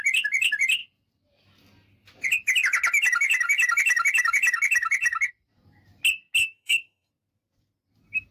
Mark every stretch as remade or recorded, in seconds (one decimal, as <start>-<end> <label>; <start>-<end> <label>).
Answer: 0.0-6.4 recorded; 6.4-7.1 remade; 7.1-8.3 recorded